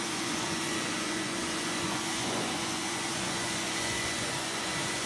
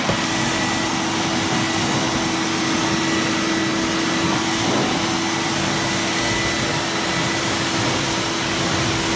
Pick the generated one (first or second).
first